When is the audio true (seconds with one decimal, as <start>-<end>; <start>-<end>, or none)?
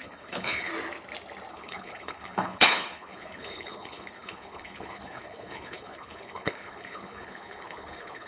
0.7-1.5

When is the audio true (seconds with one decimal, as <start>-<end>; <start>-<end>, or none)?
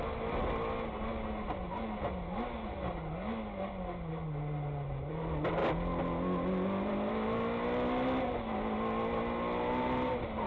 0.0-10.5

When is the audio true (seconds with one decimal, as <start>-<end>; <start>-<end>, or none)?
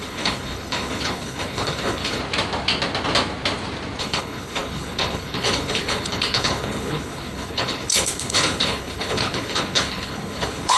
2.2-4.0